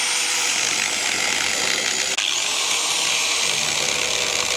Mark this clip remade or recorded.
recorded